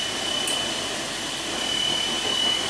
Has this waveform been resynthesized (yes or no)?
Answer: no